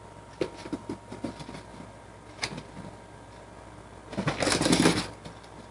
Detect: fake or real real